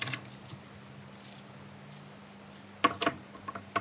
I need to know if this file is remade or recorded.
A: recorded